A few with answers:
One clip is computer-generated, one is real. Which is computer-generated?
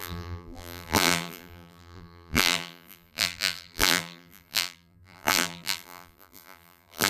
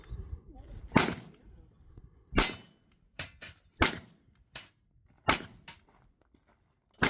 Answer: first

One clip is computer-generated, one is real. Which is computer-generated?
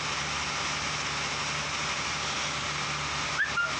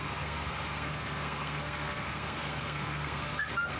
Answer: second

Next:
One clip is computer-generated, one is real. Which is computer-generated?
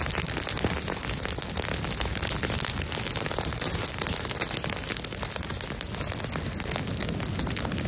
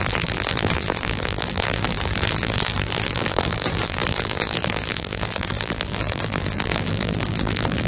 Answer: second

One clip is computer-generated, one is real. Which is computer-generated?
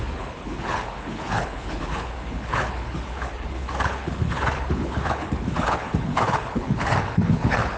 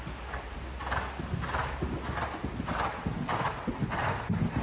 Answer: first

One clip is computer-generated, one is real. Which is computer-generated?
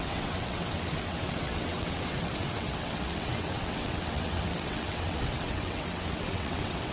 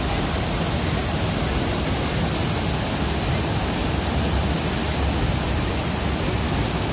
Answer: first